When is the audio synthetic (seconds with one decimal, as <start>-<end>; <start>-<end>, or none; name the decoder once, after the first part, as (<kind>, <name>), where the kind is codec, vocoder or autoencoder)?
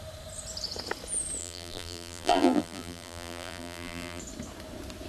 1.4-4.2 (vocoder, BigVGAN v2)